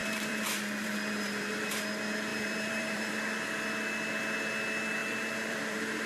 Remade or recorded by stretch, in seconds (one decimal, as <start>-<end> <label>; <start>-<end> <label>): 0.0-1.7 remade; 1.7-2.3 recorded; 2.3-3.1 remade; 3.1-5.0 recorded; 5.0-6.1 remade

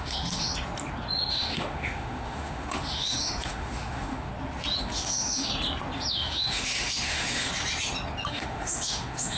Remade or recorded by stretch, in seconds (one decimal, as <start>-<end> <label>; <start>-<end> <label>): 0.0-0.5 remade; 0.5-1.3 recorded; 1.3-4.3 remade; 4.3-4.8 recorded; 4.8-5.5 remade; 5.5-6.1 recorded; 6.1-7.5 remade; 7.5-8.3 recorded; 8.3-9.4 remade

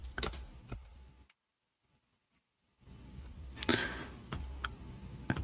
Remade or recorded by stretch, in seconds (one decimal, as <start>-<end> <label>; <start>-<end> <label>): 0.0-5.4 recorded

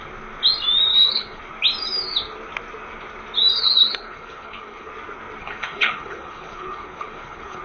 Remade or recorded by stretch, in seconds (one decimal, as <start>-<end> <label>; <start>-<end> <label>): 0.0-0.9 recorded; 0.9-1.4 remade; 1.4-3.5 recorded; 3.5-4.9 remade; 4.9-5.4 recorded; 5.4-7.6 remade

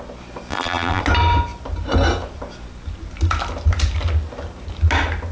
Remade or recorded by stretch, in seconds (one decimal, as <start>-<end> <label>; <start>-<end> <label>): 0.0-0.5 recorded; 0.5-1.0 remade; 1.0-5.3 recorded

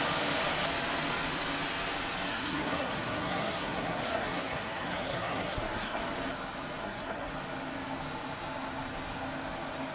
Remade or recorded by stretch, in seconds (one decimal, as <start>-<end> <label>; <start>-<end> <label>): 0.0-2.3 recorded; 2.3-6.0 remade; 6.0-6.8 recorded; 6.8-7.3 remade; 7.3-9.9 recorded

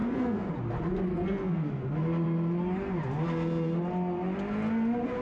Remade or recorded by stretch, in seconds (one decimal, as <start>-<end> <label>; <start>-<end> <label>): 0.0-0.5 remade; 0.5-1.1 recorded; 1.1-1.7 remade; 1.7-5.2 recorded